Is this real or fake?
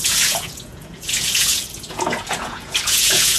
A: fake